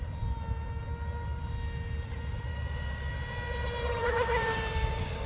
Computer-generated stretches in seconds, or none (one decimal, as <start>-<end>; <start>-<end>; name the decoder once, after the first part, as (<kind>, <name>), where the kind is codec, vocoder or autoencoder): 2.5-3.1 (codec, DAC); 3.9-5.3